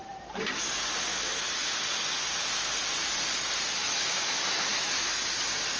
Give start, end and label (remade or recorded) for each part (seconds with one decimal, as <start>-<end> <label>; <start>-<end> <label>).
0.0-1.1 recorded; 1.1-1.8 remade; 1.8-3.8 recorded; 3.8-5.1 remade; 5.1-5.8 recorded